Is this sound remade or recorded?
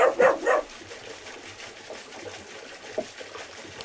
recorded